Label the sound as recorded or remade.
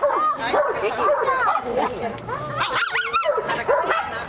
recorded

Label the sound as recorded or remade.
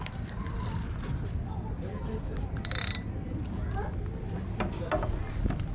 recorded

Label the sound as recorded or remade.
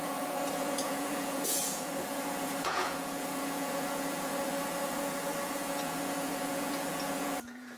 remade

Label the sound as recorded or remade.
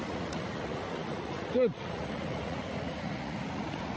remade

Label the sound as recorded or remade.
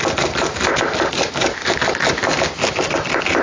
recorded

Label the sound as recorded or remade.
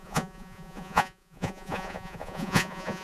remade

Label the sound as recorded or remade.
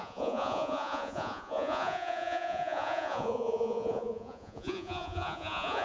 remade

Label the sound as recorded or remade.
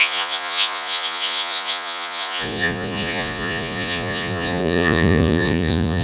remade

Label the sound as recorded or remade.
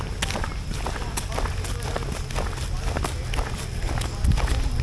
recorded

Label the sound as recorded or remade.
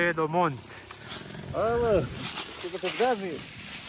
recorded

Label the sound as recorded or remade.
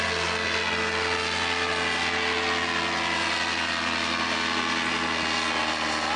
recorded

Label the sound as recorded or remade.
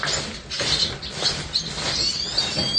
recorded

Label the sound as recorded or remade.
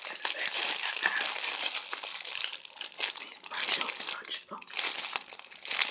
recorded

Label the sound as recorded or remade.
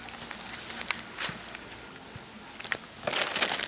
recorded